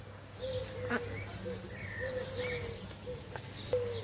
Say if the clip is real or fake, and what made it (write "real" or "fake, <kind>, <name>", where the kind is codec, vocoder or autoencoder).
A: real